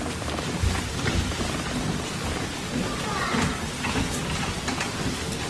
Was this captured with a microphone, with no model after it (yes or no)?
yes